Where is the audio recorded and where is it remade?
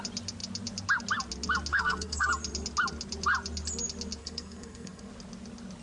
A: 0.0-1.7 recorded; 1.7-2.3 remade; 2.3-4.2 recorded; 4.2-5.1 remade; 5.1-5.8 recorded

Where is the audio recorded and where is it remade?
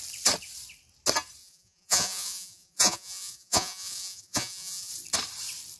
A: 0.0-1.4 recorded; 1.4-4.9 remade; 4.9-5.8 recorded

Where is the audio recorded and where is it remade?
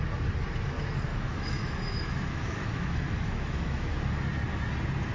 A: 0.0-1.1 recorded; 1.1-3.9 remade; 3.9-5.1 recorded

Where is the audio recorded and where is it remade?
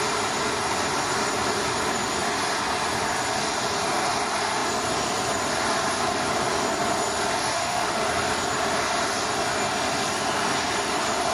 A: 0.0-7.5 recorded; 7.5-8.0 remade; 8.0-11.3 recorded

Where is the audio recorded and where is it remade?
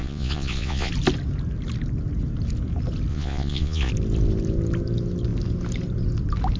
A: 0.0-0.9 remade; 0.9-3.1 recorded; 3.1-3.9 remade; 3.9-6.6 recorded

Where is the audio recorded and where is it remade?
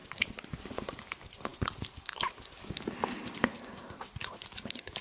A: 0.0-1.0 remade; 1.0-5.0 recorded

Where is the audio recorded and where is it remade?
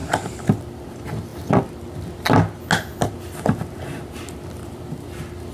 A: 0.0-5.5 recorded